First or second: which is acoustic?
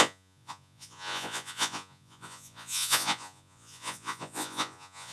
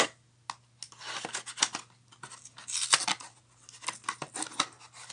second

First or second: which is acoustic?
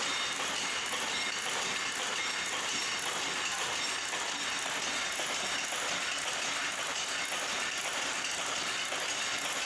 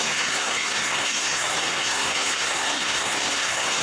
first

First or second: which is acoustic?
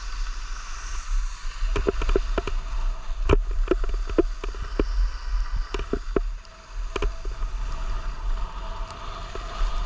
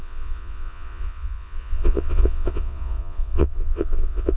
first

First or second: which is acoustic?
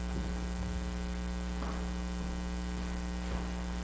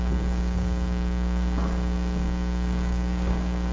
first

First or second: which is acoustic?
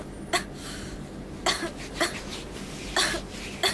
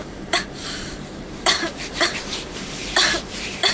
first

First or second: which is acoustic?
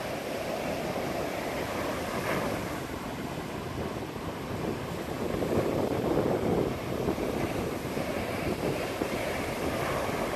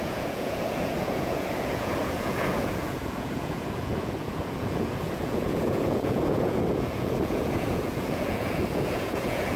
first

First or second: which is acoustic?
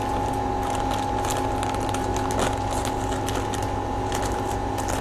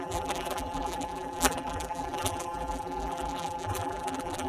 first